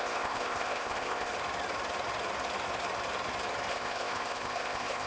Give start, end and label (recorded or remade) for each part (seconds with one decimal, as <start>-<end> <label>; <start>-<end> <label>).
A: 0.0-1.3 remade; 1.3-3.7 recorded; 3.7-5.1 remade